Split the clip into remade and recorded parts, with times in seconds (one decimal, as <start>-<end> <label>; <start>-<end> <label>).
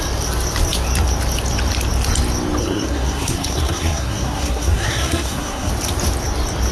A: 0.0-2.6 recorded; 2.6-5.7 remade; 5.7-6.7 recorded